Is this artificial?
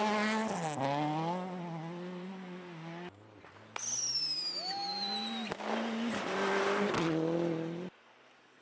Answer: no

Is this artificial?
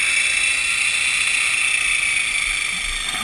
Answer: no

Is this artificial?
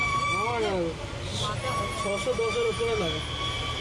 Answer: no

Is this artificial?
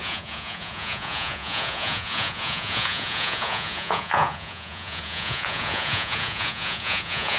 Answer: yes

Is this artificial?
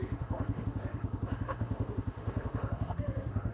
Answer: yes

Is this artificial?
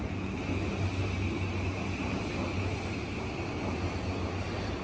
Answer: no